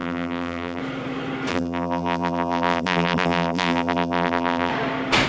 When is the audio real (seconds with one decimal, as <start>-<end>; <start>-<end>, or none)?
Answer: 0.8-1.5; 4.7-5.3